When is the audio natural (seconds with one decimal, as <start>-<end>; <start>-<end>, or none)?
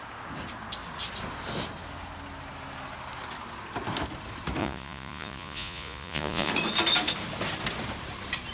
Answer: 0.0-4.6; 6.5-8.5